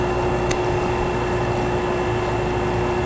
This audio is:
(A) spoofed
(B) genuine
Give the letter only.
B